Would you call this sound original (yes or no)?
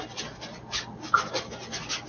yes